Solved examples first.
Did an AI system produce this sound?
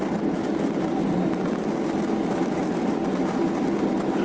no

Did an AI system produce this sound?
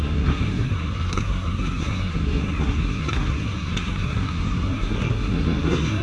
yes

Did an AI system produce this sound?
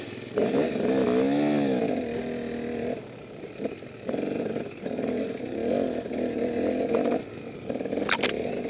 no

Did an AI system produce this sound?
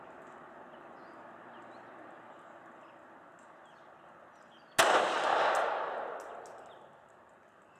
no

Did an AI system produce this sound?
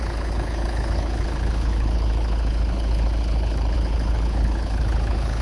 yes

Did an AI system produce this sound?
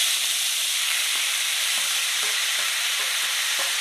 yes